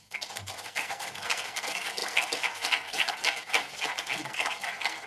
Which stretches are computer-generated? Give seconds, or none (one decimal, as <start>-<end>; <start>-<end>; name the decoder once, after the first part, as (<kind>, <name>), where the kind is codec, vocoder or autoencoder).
0.0-5.1 (codec, SNAC)